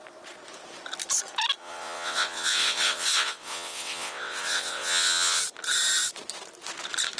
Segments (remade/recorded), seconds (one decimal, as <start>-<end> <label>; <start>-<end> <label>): 0.0-1.6 recorded; 1.6-5.4 remade; 5.4-7.2 recorded